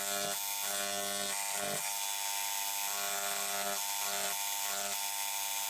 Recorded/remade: recorded